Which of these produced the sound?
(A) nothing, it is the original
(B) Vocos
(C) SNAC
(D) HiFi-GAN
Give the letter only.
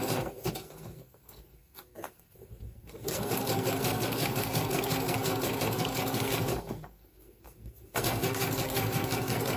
C